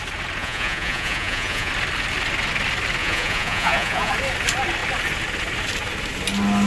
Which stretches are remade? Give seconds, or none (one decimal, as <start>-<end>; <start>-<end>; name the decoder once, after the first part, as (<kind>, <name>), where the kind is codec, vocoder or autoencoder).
0.4-1.7 (vocoder, Vocos); 3.0-4.1